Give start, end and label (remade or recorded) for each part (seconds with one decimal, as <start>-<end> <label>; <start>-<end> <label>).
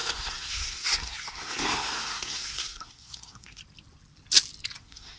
0.0-3.6 remade; 3.6-4.8 recorded; 4.8-5.2 remade